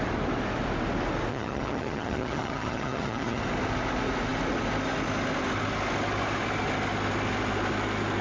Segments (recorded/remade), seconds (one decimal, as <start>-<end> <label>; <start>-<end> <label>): 0.0-1.3 recorded; 1.3-3.4 remade; 3.4-8.2 recorded